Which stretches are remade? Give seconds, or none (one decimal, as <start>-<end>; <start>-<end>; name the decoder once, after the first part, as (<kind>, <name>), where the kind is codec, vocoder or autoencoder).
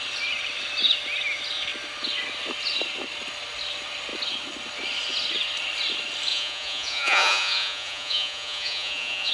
6.3-9.3 (vocoder, Vocos)